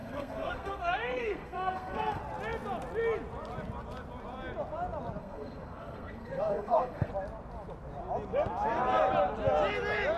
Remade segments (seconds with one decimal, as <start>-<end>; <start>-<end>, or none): 0.0-2.2; 5.2-7.1